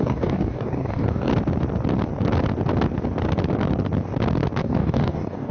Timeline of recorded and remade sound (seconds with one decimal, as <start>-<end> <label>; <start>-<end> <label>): 0.0-1.3 remade; 1.3-4.6 recorded; 4.6-5.5 remade